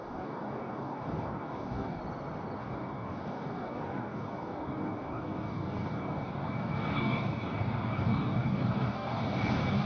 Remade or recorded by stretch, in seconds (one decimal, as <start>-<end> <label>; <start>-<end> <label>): 0.0-2.0 remade; 2.0-2.6 recorded; 2.6-9.9 remade